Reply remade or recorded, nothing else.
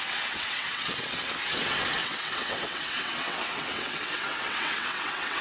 remade